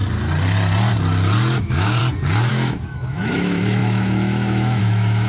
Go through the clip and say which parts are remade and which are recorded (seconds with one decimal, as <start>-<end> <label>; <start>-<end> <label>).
0.0-1.6 recorded; 1.6-2.0 remade; 2.0-2.5 recorded; 2.5-5.3 remade